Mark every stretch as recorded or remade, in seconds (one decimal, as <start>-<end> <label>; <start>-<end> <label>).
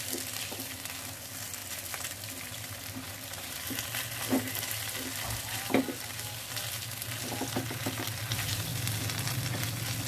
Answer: 0.0-10.1 recorded